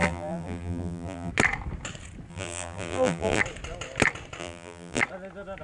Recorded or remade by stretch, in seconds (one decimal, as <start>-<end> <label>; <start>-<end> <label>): 0.0-1.3 remade; 1.3-2.3 recorded; 2.3-3.4 remade; 3.4-4.4 recorded; 4.4-5.0 remade; 5.0-5.6 recorded